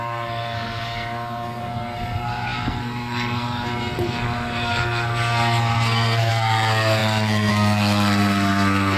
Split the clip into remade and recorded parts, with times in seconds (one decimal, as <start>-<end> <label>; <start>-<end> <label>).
0.0-9.0 remade